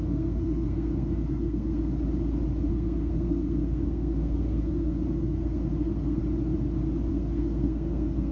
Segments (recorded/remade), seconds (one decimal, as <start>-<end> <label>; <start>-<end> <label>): 0.0-1.9 remade; 1.9-2.7 recorded; 2.7-6.2 remade; 6.2-7.1 recorded; 7.1-8.3 remade